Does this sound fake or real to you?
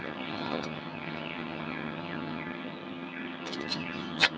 fake